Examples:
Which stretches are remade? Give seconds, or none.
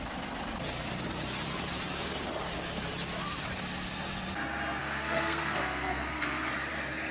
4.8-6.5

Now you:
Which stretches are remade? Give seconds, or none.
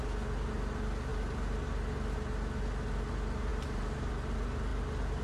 3.5-4.1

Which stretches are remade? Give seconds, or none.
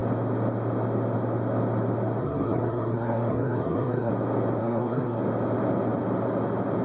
2.2-4.1; 4.6-5.2